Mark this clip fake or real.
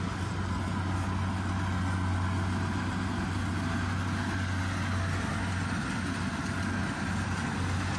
real